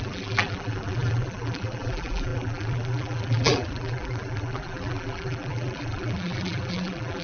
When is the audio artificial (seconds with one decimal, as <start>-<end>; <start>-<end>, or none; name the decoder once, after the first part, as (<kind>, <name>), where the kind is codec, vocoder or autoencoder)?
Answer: 0.0-7.2 (vocoder, BigVGAN v2)